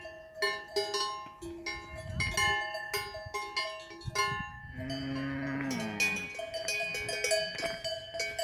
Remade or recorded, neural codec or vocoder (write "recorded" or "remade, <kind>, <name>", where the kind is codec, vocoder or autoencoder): recorded